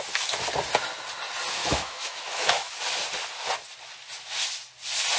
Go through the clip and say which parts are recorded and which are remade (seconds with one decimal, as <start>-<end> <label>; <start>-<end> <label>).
0.0-1.6 recorded; 1.6-2.7 remade; 2.7-5.2 recorded